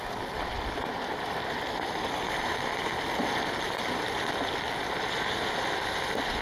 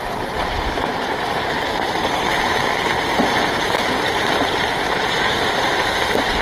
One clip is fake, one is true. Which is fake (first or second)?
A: second